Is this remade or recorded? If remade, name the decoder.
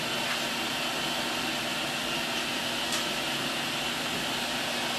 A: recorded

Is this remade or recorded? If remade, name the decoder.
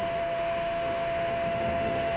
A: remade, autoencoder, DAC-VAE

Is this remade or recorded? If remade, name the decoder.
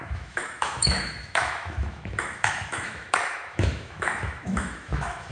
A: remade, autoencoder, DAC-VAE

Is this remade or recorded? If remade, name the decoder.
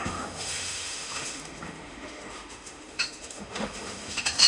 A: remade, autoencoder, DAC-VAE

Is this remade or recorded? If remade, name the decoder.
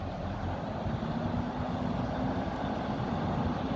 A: recorded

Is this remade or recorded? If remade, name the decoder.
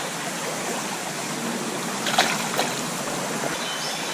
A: recorded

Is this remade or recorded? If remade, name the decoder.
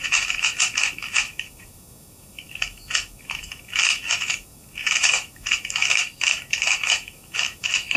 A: remade, autoencoder, DAC-VAE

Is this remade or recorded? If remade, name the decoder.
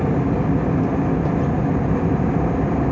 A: recorded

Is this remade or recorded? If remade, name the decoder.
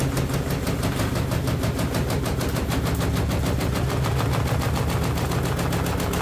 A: recorded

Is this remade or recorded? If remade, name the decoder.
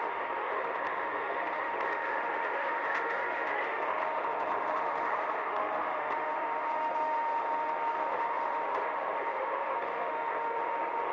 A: remade, autoencoder, DAC-VAE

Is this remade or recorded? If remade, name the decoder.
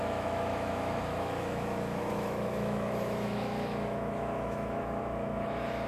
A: remade, autoencoder, DAC-VAE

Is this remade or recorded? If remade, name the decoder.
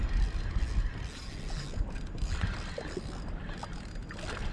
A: recorded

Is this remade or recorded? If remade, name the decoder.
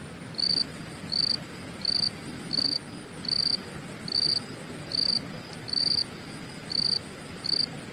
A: recorded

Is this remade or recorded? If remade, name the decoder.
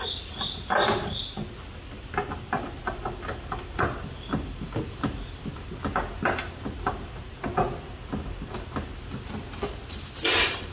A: recorded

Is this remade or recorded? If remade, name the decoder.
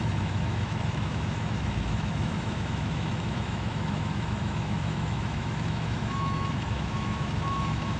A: remade, autoencoder, DAC-VAE